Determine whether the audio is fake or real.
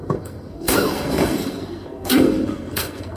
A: fake